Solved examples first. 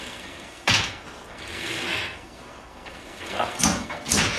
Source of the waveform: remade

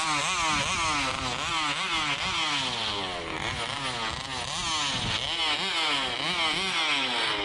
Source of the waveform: recorded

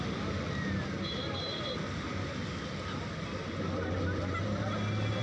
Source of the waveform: recorded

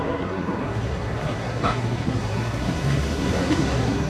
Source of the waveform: remade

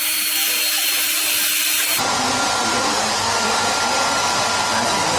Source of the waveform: recorded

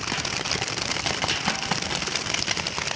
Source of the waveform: recorded